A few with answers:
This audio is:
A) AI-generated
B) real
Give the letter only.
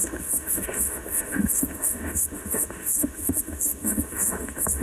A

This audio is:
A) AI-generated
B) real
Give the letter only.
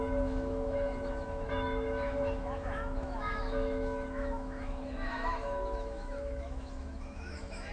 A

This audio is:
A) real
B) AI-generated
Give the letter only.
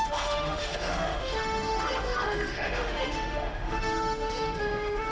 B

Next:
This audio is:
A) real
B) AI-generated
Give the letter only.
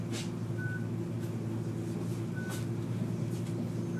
A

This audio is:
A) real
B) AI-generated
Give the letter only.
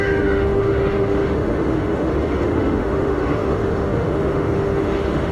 B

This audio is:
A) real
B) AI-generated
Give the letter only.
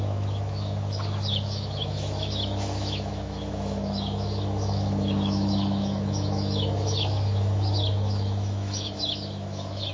B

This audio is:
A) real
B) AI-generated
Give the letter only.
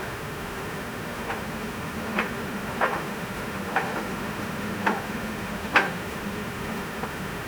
B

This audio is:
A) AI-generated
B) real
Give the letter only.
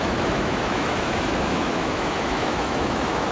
A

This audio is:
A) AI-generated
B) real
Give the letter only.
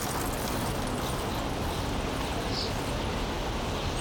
B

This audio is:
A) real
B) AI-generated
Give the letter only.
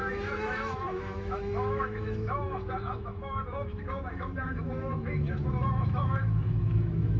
B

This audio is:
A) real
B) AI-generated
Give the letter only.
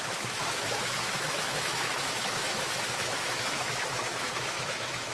B